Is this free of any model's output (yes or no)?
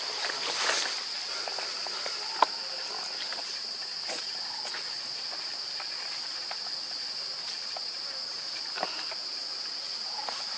yes